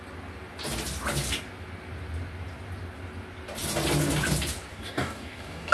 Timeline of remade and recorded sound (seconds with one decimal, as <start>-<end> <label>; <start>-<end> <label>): 0.0-4.7 recorded; 4.7-5.7 remade